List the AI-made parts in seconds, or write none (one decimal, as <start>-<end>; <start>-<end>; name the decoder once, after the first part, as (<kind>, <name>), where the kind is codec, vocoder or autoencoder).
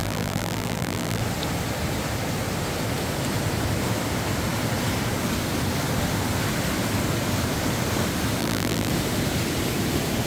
0.0-1.2 (vocoder, BigVGAN v2); 8.4-8.9